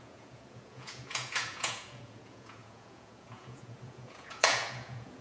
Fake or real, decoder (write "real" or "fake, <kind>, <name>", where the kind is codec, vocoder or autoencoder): fake, vocoder, Vocos